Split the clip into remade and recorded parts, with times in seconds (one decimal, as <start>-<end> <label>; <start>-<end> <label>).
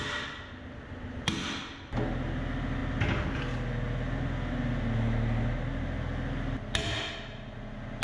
0.0-8.0 recorded